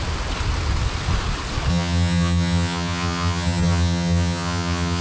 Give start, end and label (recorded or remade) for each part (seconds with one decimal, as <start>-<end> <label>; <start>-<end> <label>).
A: 0.0-1.7 recorded; 1.7-5.0 remade